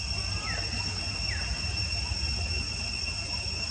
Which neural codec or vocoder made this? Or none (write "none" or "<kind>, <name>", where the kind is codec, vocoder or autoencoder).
none